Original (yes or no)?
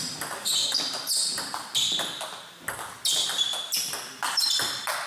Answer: yes